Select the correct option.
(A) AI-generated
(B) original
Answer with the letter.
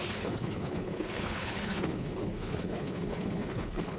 A